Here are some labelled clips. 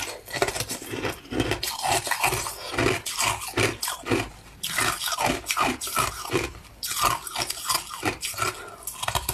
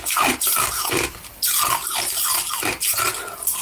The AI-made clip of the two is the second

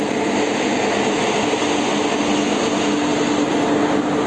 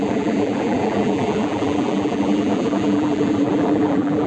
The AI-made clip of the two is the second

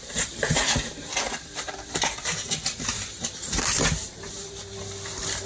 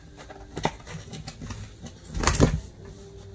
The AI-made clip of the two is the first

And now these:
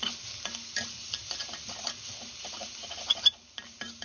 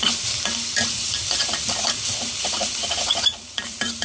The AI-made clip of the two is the second